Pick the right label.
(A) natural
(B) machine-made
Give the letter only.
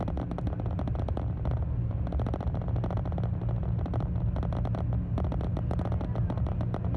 A